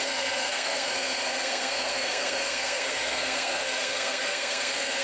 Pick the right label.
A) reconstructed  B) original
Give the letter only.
A